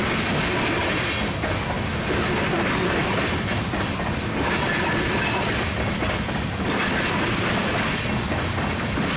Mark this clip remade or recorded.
recorded